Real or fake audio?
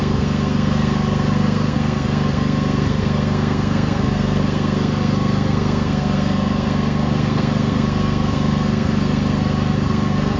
fake